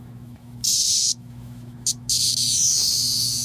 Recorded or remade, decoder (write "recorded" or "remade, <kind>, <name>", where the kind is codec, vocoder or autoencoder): remade, autoencoder, DAC-VAE